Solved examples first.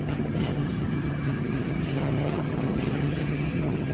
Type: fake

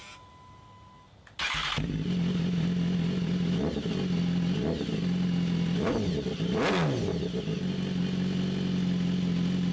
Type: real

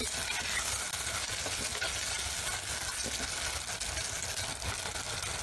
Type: real